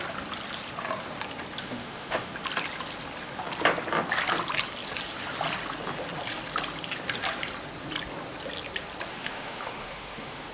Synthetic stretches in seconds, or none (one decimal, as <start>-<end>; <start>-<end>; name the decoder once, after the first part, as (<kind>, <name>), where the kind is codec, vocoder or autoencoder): 1.6-2.3 (autoencoder, DAC-VAE); 9.1-10.5